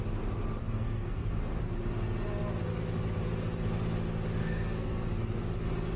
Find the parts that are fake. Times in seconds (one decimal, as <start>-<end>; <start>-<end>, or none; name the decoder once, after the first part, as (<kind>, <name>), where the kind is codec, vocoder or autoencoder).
0.6-1.6 (codec, SNAC); 4.4-5.1